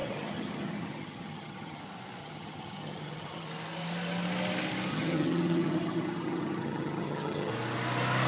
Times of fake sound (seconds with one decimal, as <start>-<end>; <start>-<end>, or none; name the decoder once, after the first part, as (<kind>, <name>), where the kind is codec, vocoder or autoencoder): 0.0-1.8 (vocoder, HiFi-GAN); 2.2-3.5; 4.9-7.5